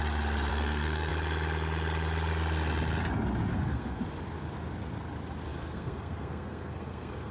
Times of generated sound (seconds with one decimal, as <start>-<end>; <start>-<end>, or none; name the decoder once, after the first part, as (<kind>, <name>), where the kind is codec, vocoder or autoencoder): 0.5-1.1 (codec, SNAC); 3.5-4.0; 5.5-7.3